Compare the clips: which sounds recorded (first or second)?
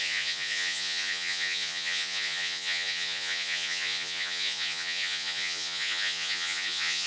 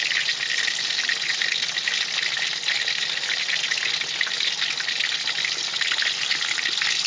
second